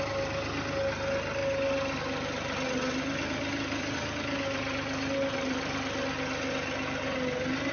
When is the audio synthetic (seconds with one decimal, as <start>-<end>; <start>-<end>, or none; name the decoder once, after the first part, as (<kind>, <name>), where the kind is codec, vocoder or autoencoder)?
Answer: none